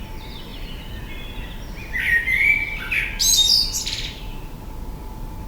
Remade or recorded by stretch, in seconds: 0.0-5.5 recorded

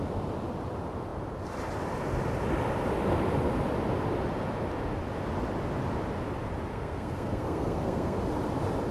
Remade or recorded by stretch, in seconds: 0.0-6.7 recorded; 6.7-8.2 remade; 8.2-8.9 recorded